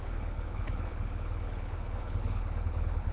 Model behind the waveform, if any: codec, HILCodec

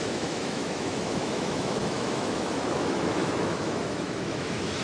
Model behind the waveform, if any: autoencoder, DAC-VAE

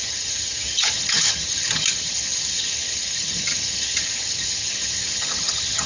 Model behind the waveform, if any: vocoder, HiFi-GAN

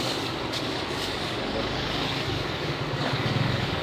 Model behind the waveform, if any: codec, DAC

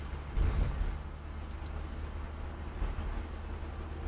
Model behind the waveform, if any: none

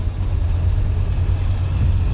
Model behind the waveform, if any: none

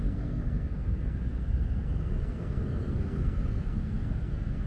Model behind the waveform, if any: codec, SNAC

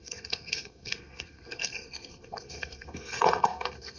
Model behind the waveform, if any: codec, SNAC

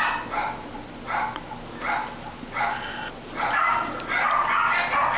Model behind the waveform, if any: none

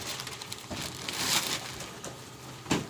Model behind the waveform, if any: none